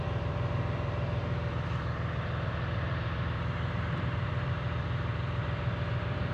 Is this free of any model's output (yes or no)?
no